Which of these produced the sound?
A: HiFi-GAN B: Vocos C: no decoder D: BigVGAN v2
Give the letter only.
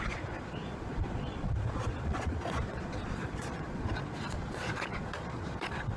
B